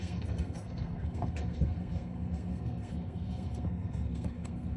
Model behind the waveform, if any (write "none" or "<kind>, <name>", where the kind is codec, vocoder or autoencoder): codec, SNAC